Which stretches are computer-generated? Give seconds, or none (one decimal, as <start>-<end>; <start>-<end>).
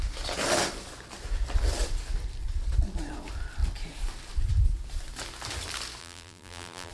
6.0-6.9